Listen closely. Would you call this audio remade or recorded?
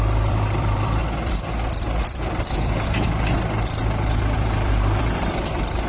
remade